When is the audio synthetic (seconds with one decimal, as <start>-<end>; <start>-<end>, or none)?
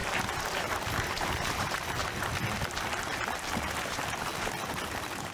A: 0.0-2.0; 3.8-4.3